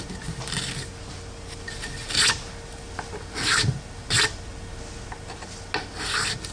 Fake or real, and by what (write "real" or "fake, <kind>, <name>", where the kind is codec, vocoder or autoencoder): real